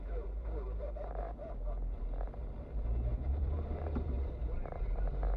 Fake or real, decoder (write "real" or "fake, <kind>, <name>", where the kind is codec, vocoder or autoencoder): fake, vocoder, BigVGAN v2